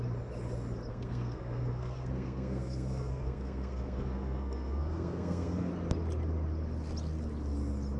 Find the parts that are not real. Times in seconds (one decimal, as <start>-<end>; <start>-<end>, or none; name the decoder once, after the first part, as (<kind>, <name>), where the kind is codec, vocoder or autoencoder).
0.9-5.7 (codec, SNAC)